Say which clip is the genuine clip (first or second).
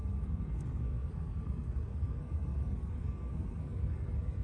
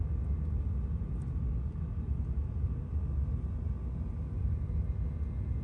second